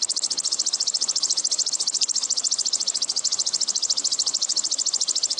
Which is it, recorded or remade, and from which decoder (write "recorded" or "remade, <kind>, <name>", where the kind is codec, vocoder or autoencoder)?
remade, codec, HILCodec